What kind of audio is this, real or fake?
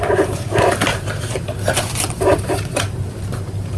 fake